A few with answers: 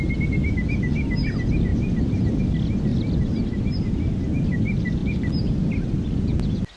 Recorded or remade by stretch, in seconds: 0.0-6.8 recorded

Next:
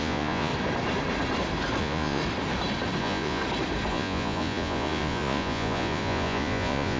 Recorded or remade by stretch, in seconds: 0.0-0.5 remade; 0.5-1.8 recorded; 1.8-2.2 remade; 2.2-3.0 recorded; 3.0-3.4 remade; 3.4-3.9 recorded; 3.9-7.0 remade

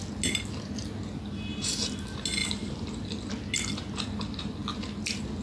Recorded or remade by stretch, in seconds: 0.0-5.4 recorded

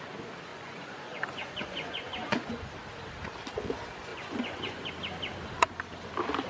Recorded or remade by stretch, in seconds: 0.0-0.5 recorded; 0.5-2.7 remade; 2.7-4.1 recorded; 4.1-4.9 remade; 4.9-6.5 recorded